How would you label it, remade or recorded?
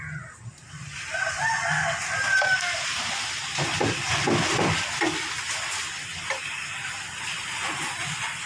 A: recorded